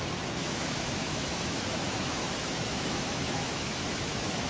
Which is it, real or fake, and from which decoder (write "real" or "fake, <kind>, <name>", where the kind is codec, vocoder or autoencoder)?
fake, autoencoder, DAC-VAE